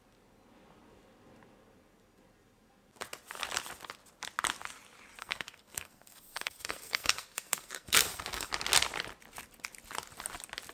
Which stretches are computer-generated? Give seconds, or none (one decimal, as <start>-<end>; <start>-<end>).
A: 5.2-8.5